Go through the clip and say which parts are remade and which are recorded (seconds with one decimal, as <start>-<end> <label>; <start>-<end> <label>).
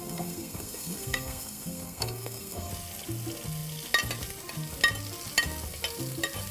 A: 0.0-2.7 remade; 2.7-6.5 recorded